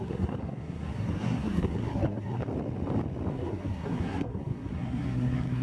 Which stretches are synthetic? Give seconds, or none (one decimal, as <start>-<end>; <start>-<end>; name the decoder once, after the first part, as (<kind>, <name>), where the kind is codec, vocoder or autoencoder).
0.0-2.4 (codec, SNAC); 3.3-5.6